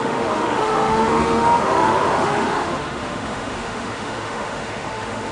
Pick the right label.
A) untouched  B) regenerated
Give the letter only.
B